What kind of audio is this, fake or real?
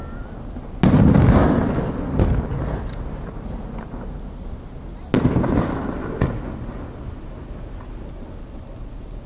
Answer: real